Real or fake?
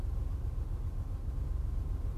real